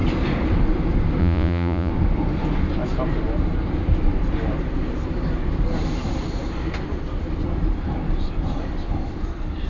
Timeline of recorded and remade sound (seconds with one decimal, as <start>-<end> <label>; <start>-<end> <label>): 0.0-1.2 recorded; 1.2-1.9 remade; 1.9-9.7 recorded